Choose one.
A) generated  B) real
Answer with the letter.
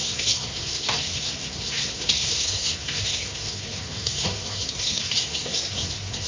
A